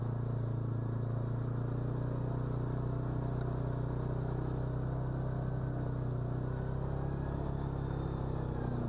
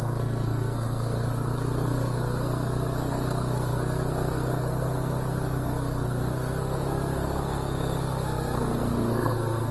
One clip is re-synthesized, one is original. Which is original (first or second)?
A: first